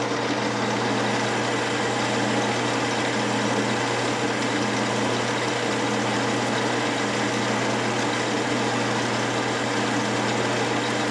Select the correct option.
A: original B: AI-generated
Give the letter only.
A